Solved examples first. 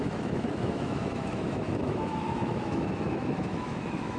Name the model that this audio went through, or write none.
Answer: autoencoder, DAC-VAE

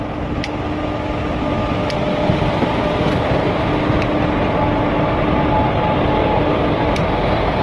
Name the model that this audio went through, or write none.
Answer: none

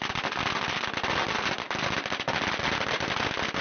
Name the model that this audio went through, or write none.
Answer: none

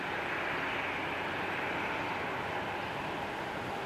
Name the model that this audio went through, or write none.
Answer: none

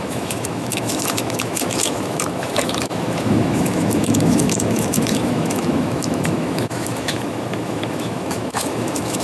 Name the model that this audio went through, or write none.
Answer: autoencoder, DAC-VAE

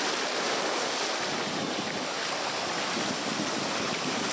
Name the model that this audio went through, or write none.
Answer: none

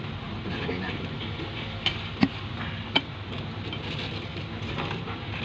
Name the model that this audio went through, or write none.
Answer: none